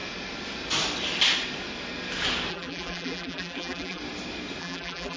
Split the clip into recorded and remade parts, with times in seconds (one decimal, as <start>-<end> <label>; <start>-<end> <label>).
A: 0.0-2.5 recorded; 2.5-4.0 remade; 4.0-4.6 recorded; 4.6-5.2 remade